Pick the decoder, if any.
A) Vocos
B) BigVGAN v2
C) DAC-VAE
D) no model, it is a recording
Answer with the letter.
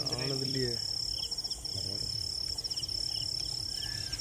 B